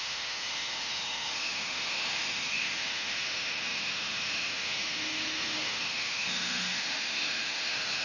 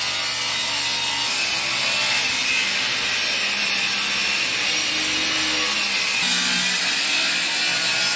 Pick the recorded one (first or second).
second